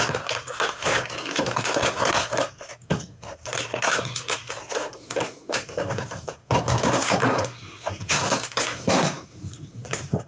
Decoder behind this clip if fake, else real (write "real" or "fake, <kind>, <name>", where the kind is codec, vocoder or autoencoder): fake, codec, SNAC